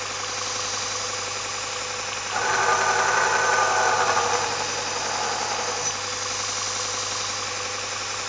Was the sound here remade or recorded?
recorded